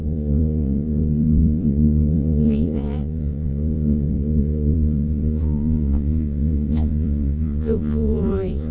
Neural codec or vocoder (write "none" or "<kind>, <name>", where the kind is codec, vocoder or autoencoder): vocoder, Vocos